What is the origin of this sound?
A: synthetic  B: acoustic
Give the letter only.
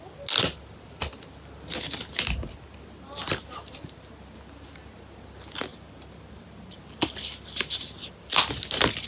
B